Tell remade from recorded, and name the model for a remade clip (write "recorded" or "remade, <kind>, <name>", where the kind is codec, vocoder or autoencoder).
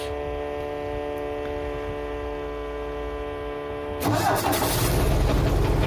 recorded